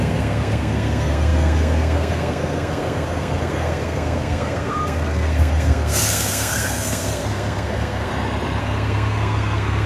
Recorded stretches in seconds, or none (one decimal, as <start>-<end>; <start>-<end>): 8.1-8.6